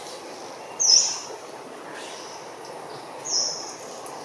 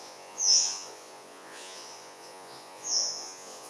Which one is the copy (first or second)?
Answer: second